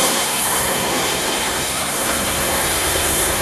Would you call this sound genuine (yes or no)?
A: no